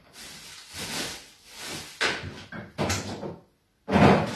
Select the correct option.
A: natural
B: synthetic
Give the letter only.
A